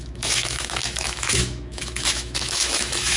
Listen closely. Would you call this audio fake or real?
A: fake